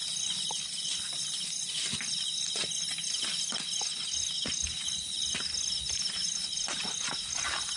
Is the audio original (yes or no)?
yes